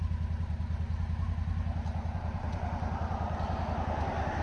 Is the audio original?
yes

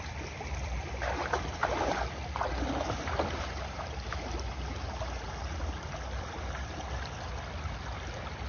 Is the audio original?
yes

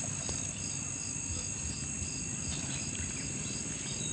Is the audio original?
yes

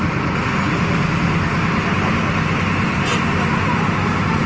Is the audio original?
yes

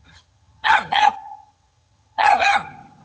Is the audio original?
no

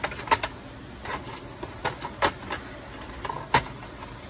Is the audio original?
yes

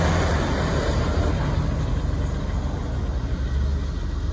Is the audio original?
yes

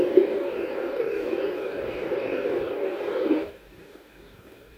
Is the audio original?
no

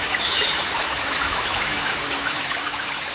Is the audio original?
no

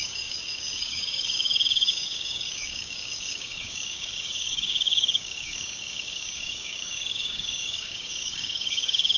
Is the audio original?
no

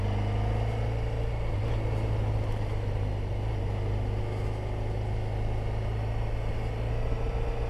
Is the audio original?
yes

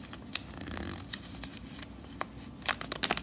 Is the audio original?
yes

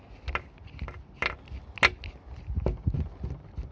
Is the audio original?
yes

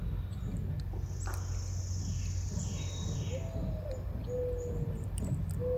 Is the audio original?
yes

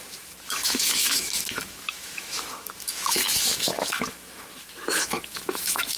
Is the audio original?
no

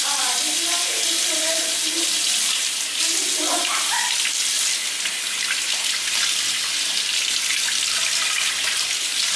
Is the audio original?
yes